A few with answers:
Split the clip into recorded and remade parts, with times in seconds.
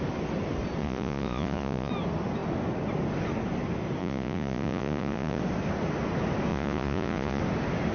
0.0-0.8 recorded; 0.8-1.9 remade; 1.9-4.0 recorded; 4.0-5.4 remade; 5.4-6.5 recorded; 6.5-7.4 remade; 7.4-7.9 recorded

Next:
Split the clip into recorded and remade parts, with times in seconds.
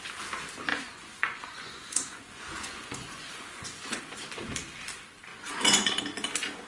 0.0-0.7 recorded; 0.7-4.0 remade; 4.0-5.3 recorded; 5.3-6.0 remade; 6.0-6.7 recorded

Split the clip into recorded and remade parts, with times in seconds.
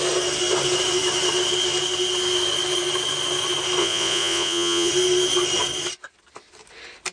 0.0-3.8 recorded; 3.8-4.9 remade; 4.9-7.1 recorded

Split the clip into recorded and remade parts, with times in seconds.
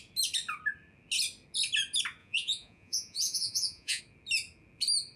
0.0-2.2 recorded; 2.2-4.0 remade; 4.0-5.2 recorded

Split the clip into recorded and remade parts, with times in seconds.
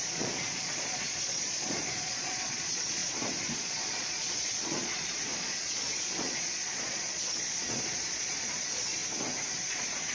0.0-9.0 remade; 9.0-9.7 recorded; 9.7-10.1 remade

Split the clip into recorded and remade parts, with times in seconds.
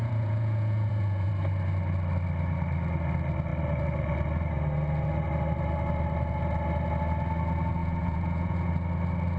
0.0-1.3 remade; 1.3-7.8 recorded; 7.8-8.7 remade; 8.7-9.4 recorded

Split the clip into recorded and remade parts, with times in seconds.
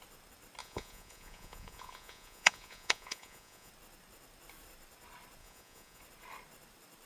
0.0-0.6 recorded; 0.6-3.7 remade; 3.7-5.4 recorded; 5.4-6.0 remade; 6.0-7.1 recorded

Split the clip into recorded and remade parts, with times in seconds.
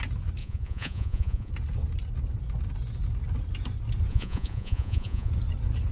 0.0-0.4 recorded; 0.4-1.5 remade; 1.5-4.1 recorded; 4.1-5.3 remade; 5.3-5.9 recorded